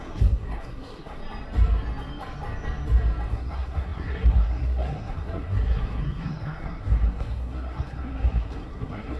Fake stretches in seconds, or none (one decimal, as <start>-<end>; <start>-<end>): 0.0-1.2; 3.3-9.2